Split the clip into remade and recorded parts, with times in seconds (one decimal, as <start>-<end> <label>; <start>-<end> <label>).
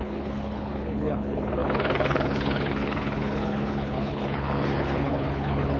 0.0-5.8 remade